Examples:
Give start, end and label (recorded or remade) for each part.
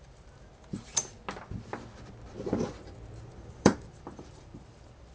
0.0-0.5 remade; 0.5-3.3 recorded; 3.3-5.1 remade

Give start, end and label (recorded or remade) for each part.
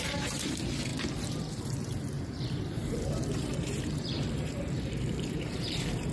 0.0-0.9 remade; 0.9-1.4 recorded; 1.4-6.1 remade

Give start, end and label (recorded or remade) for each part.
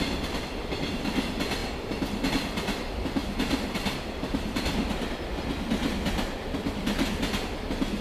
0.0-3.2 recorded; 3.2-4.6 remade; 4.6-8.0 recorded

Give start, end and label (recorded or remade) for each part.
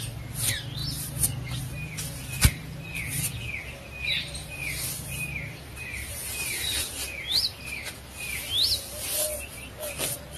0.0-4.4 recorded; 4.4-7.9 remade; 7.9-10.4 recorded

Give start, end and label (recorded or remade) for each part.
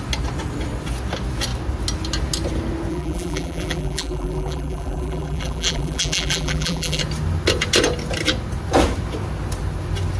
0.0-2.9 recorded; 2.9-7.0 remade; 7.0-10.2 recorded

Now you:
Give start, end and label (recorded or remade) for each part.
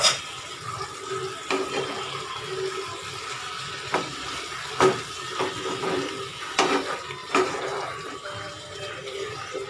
0.0-7.2 recorded; 7.2-9.7 remade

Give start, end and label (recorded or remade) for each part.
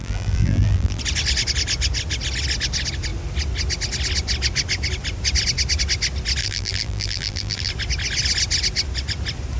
0.0-1.0 remade; 1.0-6.4 recorded; 6.4-7.7 remade; 7.7-9.6 recorded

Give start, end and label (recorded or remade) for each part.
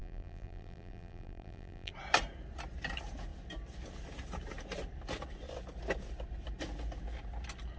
0.0-1.9 remade; 1.9-7.8 recorded